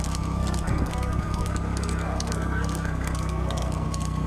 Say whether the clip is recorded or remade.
remade